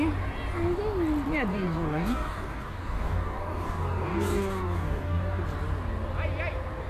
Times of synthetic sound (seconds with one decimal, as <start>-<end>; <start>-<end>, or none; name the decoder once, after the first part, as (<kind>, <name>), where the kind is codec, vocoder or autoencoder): 1.5-5.4 (codec, DAC)